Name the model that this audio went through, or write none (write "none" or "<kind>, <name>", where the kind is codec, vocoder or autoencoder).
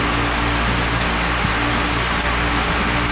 none